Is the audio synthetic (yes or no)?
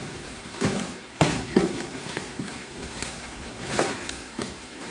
yes